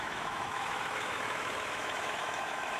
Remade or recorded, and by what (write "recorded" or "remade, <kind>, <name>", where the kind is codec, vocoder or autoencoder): remade, autoencoder, DAC-VAE